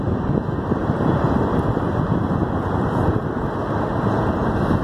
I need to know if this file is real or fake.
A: real